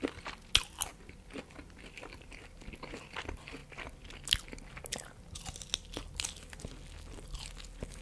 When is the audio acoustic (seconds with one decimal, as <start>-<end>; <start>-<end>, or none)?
0.0-8.0